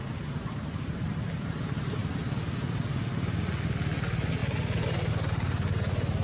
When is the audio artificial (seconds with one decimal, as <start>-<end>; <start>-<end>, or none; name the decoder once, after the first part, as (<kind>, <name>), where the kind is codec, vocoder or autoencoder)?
none